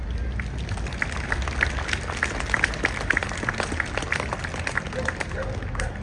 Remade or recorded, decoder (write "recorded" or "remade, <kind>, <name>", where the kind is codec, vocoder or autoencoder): recorded